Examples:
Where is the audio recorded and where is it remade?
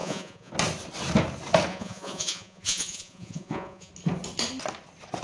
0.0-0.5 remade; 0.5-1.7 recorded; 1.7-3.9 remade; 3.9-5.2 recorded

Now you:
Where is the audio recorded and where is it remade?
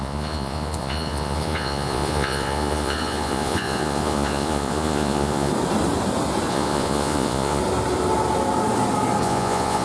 0.0-5.5 remade; 5.5-6.5 recorded; 6.5-7.6 remade; 7.6-9.2 recorded; 9.2-9.8 remade